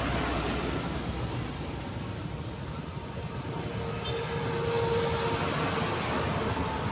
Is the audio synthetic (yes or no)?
no